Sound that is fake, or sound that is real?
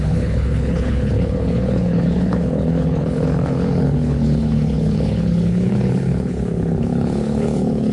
fake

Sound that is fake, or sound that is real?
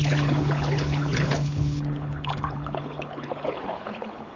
fake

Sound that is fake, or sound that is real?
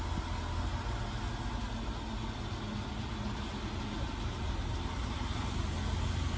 real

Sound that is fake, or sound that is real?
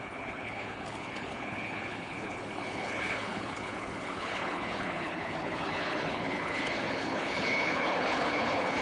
fake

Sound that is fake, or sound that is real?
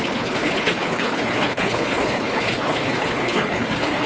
fake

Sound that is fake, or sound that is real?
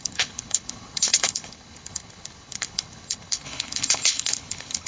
fake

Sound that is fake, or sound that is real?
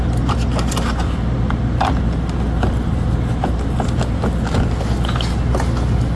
real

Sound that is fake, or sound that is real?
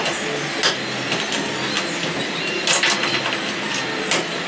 real